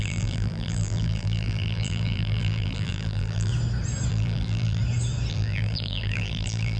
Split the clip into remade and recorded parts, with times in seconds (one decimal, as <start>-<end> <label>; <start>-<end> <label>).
0.0-3.5 remade; 3.5-4.1 recorded; 4.1-4.8 remade; 4.8-5.3 recorded; 5.3-6.8 remade